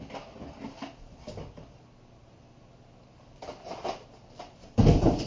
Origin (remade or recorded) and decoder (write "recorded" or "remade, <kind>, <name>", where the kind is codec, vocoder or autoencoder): recorded